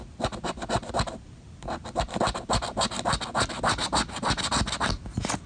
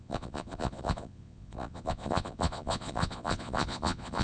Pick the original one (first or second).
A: first